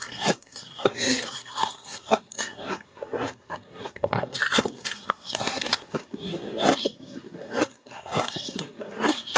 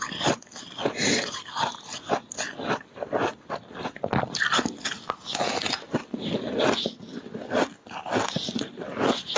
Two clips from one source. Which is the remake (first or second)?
first